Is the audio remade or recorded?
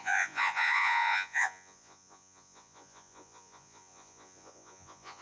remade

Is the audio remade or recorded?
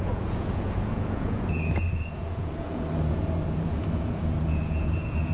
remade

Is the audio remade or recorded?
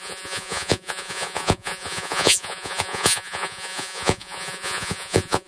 remade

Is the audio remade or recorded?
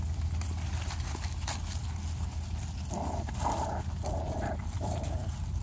recorded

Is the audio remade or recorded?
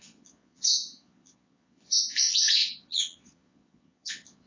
remade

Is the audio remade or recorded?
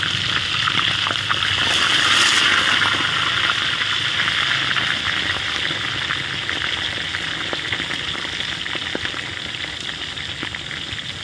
recorded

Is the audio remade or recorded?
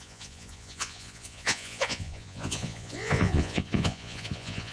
remade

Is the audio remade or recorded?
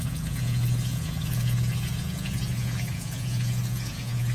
remade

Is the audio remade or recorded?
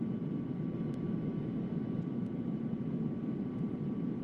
recorded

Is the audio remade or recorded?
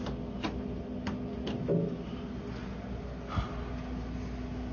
recorded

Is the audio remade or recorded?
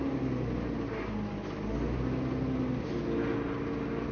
recorded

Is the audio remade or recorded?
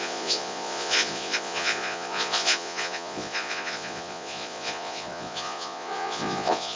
remade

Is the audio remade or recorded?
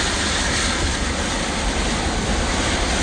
recorded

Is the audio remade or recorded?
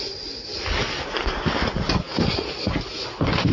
recorded